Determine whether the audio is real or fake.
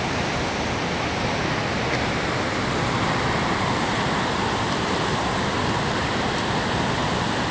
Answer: real